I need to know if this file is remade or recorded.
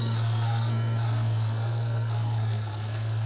remade